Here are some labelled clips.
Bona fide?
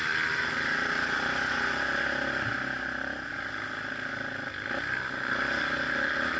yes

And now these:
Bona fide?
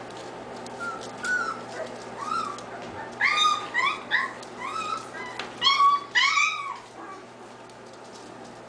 yes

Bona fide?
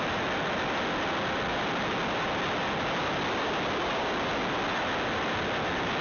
yes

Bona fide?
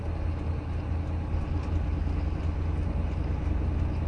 yes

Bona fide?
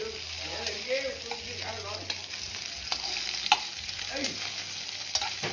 yes